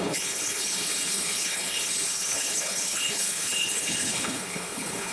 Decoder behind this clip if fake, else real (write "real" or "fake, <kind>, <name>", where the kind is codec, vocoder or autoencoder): fake, codec, HILCodec